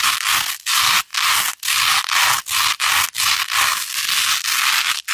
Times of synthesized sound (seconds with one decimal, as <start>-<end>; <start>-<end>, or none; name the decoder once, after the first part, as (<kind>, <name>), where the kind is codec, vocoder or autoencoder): none